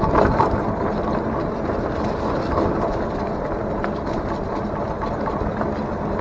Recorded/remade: recorded